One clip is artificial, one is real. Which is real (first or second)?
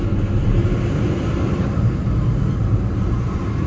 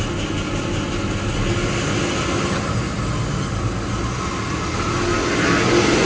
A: second